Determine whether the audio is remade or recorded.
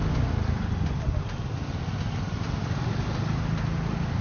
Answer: recorded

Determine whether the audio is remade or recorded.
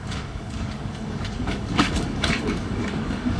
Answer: remade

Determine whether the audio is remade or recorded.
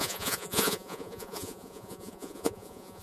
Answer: remade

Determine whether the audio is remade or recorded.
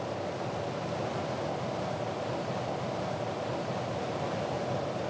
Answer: recorded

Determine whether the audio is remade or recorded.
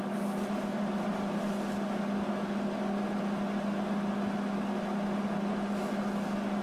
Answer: recorded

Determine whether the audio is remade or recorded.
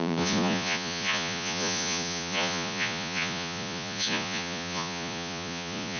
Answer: remade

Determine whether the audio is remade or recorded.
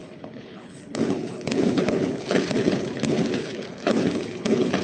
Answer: remade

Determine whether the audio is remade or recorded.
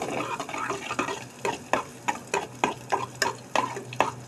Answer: recorded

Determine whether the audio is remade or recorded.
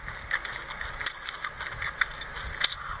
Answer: recorded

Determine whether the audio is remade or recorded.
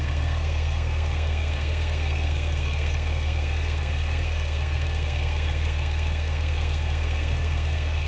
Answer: remade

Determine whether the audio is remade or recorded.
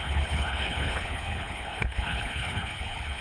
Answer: remade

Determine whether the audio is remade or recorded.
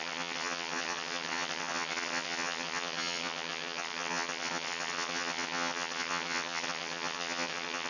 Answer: remade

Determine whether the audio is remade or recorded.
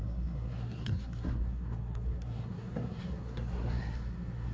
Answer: remade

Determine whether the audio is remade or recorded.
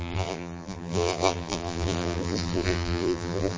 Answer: remade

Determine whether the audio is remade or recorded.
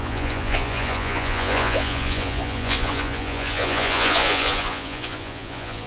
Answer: remade